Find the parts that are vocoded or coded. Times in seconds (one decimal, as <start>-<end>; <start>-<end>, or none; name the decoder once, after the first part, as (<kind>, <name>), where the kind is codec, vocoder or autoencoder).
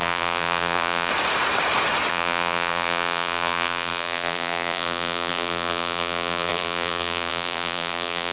0.0-1.1 (vocoder, BigVGAN v2); 2.1-8.3